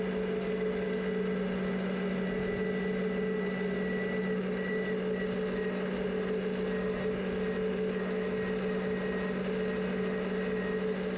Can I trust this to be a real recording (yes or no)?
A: yes